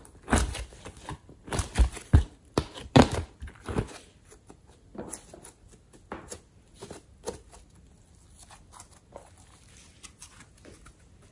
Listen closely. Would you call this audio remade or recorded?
recorded